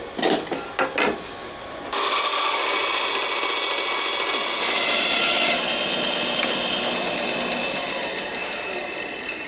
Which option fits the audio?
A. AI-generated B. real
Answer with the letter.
B